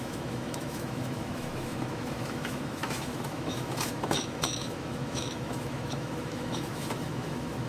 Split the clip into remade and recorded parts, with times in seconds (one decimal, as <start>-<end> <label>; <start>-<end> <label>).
0.0-7.7 remade